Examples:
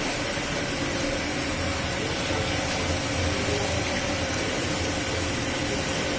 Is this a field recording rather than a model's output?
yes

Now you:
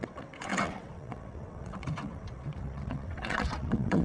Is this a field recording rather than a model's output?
no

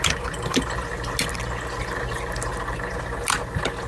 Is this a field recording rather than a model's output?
yes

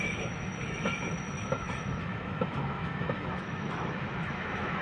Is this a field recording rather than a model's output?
no